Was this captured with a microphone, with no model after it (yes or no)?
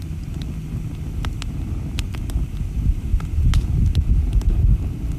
yes